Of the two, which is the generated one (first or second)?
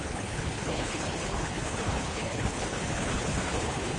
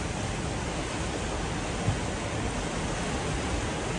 first